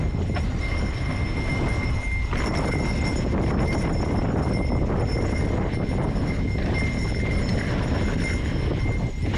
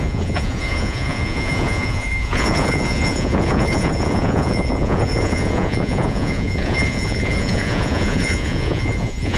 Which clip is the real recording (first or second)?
first